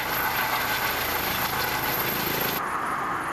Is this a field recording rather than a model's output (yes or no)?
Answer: yes